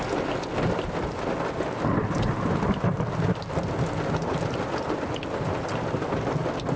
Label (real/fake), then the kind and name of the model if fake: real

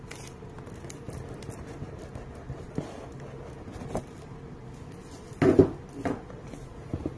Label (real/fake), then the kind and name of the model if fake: real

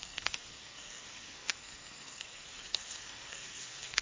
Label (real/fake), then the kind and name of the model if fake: fake, codec, SNAC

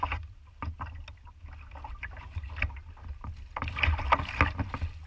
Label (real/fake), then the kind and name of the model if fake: real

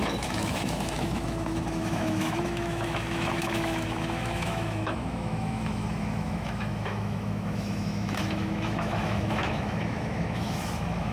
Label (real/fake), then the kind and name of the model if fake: fake, autoencoder, DAC-VAE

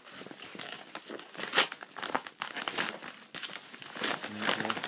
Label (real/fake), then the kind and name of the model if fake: real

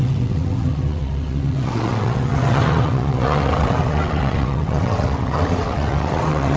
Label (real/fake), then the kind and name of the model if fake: fake, vocoder, WaveNeXt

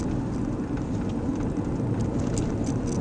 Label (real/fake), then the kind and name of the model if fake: real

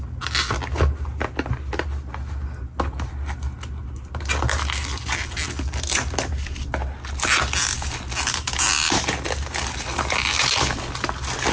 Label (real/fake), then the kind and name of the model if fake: real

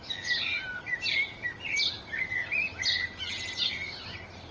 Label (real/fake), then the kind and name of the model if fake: real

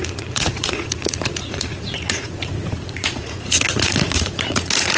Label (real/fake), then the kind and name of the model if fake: fake, vocoder, Vocos